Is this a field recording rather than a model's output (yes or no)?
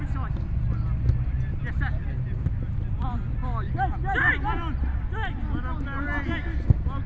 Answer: yes